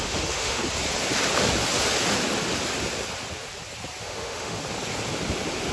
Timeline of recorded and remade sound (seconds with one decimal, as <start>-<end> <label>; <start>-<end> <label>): 0.0-0.6 remade; 0.6-4.0 recorded; 4.0-4.6 remade; 4.6-5.7 recorded